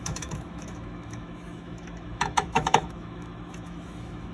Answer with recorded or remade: remade